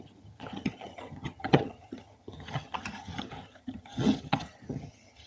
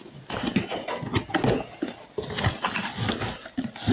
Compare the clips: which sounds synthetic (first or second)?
first